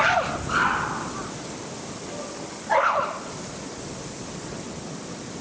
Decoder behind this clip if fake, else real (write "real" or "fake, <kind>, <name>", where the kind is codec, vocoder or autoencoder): real